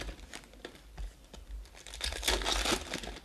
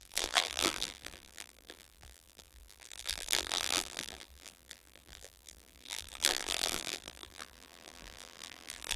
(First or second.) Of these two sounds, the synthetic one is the second